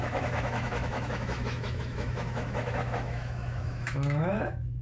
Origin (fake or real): fake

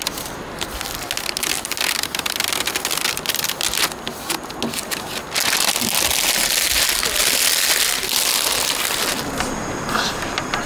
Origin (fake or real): real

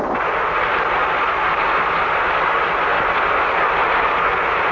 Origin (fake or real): real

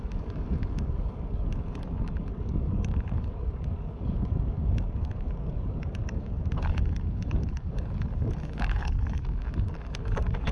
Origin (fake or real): fake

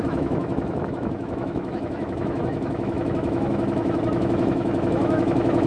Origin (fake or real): fake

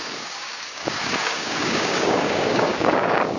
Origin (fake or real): fake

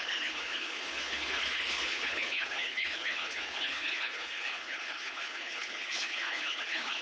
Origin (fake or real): fake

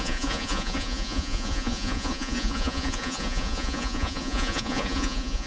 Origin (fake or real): fake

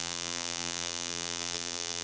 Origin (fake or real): fake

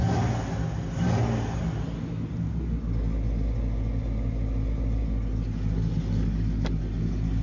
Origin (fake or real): real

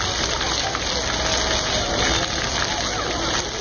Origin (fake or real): real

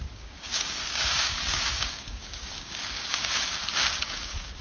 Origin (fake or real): fake